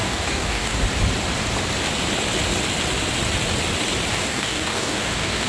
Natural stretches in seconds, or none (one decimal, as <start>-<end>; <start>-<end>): 0.8-4.1

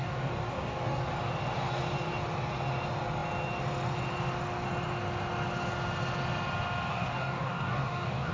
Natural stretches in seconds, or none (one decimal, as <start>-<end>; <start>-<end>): 1.0-6.9

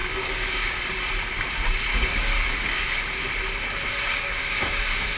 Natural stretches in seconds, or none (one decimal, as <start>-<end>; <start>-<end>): 0.8-1.9; 3.1-4.1